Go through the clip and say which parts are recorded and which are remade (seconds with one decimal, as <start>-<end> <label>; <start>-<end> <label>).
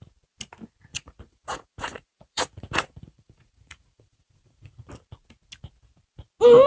0.0-0.9 recorded; 0.9-4.9 remade; 4.9-6.7 recorded